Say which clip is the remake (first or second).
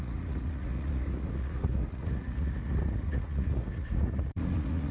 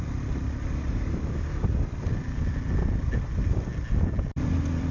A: first